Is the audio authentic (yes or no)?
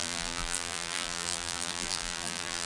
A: no